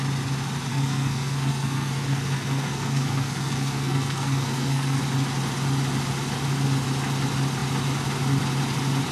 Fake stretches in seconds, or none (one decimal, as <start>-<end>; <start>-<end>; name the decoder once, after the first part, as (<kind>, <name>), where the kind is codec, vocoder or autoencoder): 0.7-5.0 (codec, SNAC)